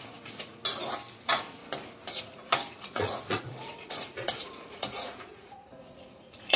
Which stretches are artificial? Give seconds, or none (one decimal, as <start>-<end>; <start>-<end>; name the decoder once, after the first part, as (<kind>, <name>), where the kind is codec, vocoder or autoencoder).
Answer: 0.0-0.6 (vocoder, Vocos); 1.1-1.6; 2.1-6.6